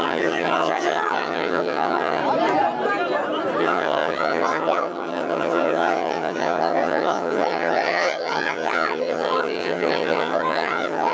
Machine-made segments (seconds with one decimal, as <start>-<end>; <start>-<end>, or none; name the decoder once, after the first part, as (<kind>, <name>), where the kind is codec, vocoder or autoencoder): 0.0-2.2 (vocoder, HiFi-GAN); 3.6-11.1